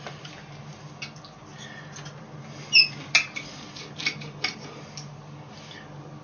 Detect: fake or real real